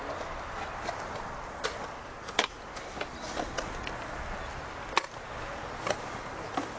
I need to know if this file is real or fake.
real